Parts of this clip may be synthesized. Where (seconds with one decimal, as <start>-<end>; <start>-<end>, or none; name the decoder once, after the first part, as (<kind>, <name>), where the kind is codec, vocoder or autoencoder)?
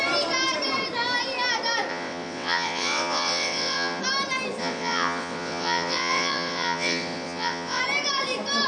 1.9-4.0 (vocoder, WaveNeXt); 4.6-7.8